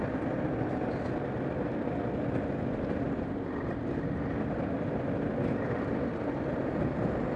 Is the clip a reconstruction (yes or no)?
no